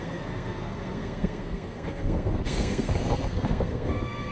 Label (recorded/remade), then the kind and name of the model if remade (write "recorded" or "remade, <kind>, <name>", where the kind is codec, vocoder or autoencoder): remade, codec, SNAC